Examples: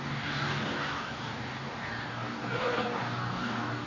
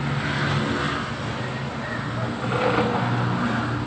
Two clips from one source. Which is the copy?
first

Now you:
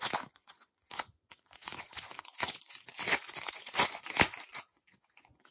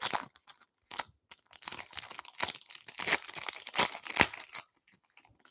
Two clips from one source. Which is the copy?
first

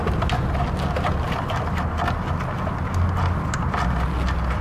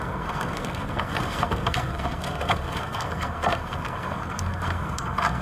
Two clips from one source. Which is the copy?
second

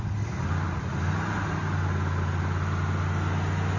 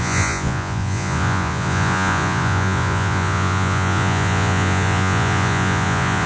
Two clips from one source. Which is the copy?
second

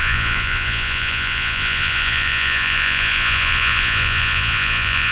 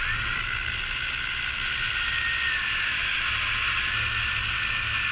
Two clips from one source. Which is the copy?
first